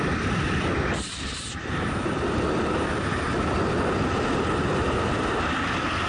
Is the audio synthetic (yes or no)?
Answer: no